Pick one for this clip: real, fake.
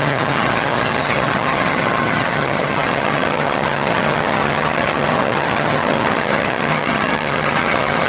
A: fake